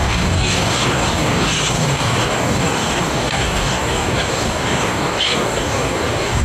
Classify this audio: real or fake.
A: fake